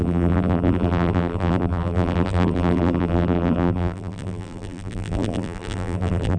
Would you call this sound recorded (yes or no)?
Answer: no